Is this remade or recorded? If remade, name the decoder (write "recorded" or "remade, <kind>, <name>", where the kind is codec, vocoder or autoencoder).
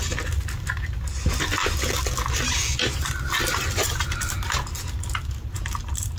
recorded